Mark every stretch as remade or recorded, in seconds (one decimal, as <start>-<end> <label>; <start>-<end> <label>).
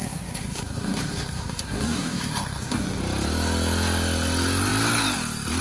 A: 0.0-3.0 remade; 3.0-5.6 recorded